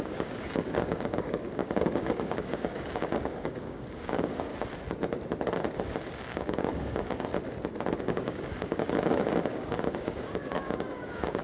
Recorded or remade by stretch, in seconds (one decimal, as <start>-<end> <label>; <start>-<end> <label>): 0.0-4.5 remade; 4.5-6.2 recorded; 6.2-7.3 remade; 7.3-8.0 recorded; 8.0-11.4 remade